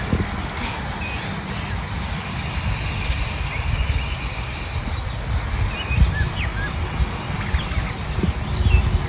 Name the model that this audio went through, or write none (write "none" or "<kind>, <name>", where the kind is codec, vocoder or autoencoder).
none